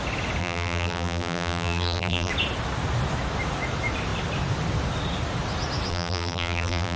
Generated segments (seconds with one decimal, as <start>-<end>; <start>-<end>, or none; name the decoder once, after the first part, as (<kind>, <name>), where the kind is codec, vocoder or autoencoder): 0.4-2.3 (vocoder, BigVGAN v2); 5.9-7.0